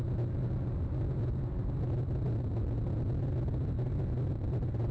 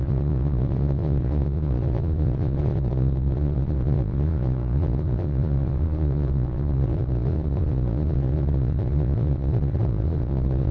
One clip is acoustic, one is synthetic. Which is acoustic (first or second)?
first